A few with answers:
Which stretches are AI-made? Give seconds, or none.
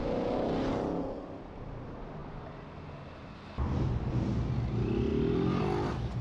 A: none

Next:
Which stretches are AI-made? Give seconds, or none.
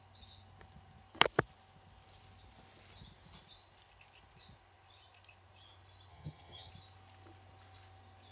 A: 6.1-6.7